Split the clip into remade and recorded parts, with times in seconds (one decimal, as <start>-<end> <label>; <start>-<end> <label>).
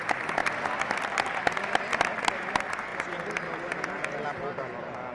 0.0-0.4 recorded; 0.4-2.0 remade; 2.0-5.1 recorded